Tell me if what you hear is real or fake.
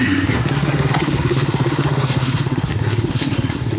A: fake